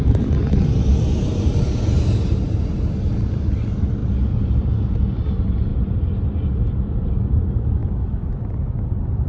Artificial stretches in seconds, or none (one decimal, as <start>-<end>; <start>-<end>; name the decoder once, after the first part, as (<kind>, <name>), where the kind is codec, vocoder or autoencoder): 7.8-9.3 (vocoder, BigVGAN v2)